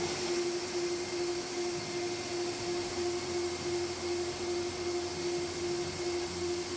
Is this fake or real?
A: real